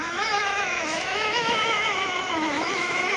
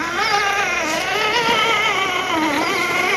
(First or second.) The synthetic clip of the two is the first